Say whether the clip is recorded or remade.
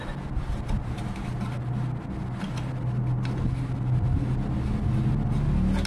recorded